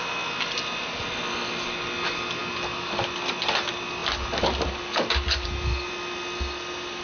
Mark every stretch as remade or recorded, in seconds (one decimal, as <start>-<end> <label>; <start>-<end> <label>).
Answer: 0.0-7.0 recorded